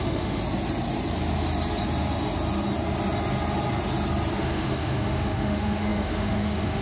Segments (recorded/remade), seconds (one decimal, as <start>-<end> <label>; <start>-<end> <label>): 0.0-0.4 remade; 0.4-4.4 recorded; 4.4-6.8 remade